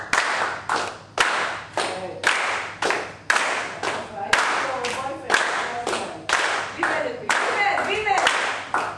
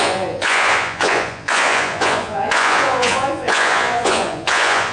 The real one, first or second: first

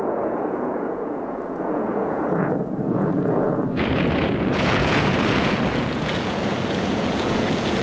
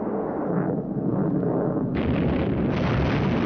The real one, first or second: second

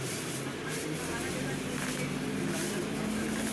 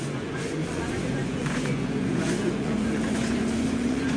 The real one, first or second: first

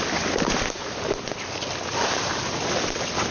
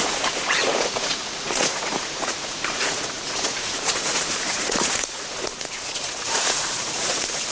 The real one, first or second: first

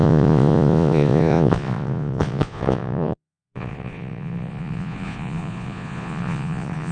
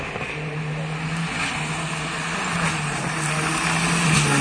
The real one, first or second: second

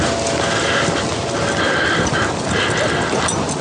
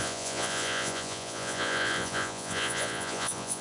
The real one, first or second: first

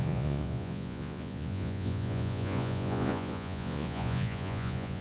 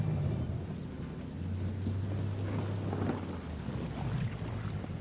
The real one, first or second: second